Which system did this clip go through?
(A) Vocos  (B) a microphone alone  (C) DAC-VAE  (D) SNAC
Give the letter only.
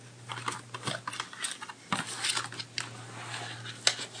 B